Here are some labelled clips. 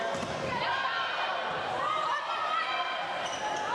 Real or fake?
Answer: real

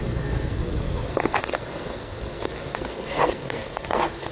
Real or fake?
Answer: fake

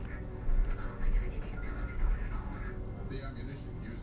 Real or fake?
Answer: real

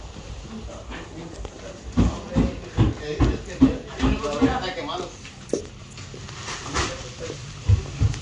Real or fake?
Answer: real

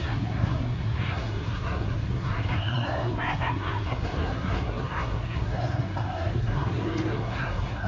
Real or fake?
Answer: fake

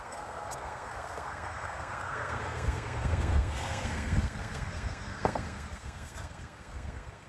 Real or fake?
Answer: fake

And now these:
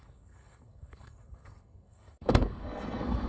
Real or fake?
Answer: fake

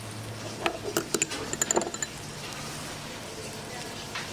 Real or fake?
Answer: real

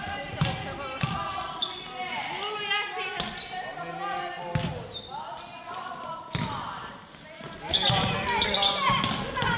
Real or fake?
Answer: real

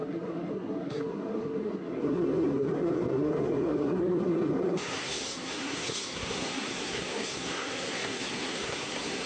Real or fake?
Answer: fake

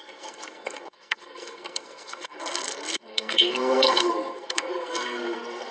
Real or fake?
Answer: fake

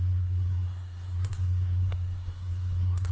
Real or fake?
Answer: fake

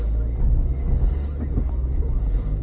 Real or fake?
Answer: real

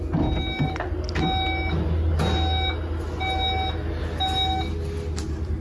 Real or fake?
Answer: real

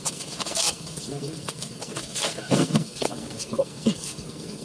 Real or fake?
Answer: fake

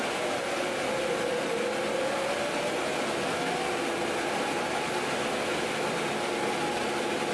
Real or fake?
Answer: real